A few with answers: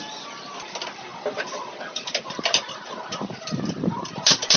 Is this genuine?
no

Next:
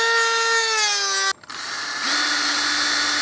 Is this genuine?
yes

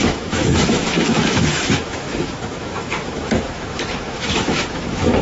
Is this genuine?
no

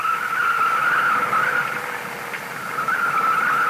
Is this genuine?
yes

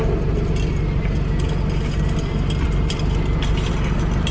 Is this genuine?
yes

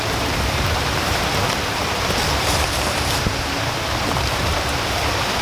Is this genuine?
no